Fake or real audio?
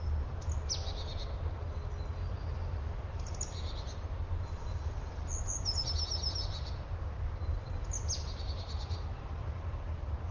real